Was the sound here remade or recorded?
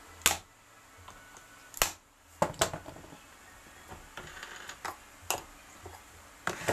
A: recorded